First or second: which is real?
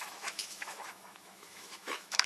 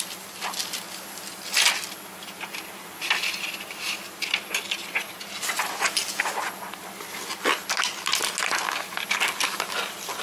second